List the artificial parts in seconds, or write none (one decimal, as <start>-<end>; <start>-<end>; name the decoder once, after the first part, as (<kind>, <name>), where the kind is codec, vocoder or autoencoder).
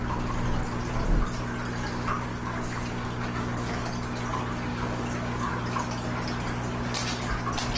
2.3-3.9 (codec, DAC); 4.7-5.5